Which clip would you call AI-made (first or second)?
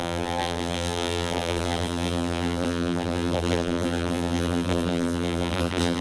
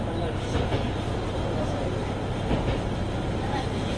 first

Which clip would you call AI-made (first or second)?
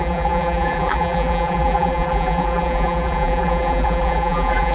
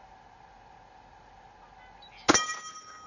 first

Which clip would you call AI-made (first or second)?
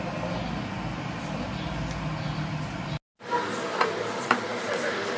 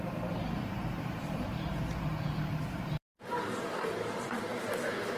second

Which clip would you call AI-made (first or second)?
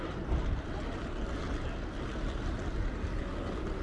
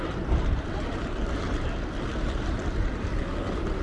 second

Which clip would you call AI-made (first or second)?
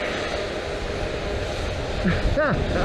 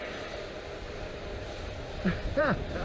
second